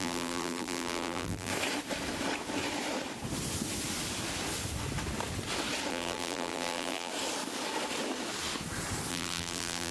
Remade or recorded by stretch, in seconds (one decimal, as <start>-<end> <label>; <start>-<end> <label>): 0.0-1.5 remade; 1.5-5.9 recorded; 5.9-7.1 remade; 7.1-9.1 recorded; 9.1-9.9 remade